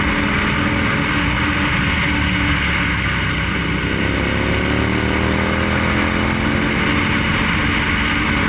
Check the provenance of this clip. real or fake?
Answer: real